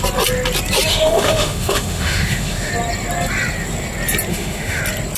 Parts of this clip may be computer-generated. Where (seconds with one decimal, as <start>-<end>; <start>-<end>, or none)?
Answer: 0.9-2.7; 4.3-4.8